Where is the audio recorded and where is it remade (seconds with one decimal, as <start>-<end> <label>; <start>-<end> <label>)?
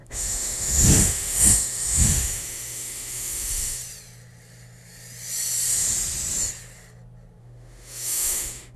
0.0-3.8 remade; 3.8-7.4 recorded; 7.4-8.8 remade